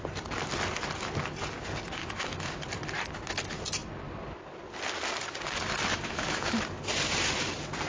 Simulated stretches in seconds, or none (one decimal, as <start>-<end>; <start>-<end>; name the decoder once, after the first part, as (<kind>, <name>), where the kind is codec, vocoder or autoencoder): 2.0-2.5 (autoencoder, DAC-VAE); 5.9-6.6